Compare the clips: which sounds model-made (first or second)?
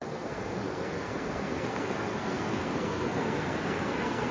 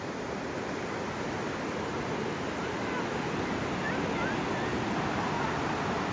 first